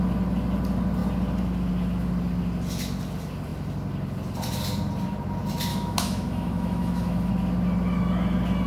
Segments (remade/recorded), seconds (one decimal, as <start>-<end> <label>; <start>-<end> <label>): 0.0-5.7 recorded; 5.7-7.3 remade; 7.3-8.7 recorded